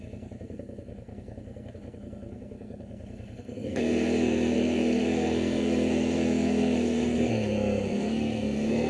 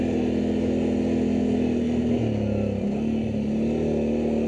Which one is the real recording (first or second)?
second